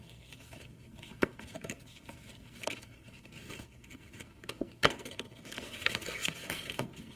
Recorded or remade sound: remade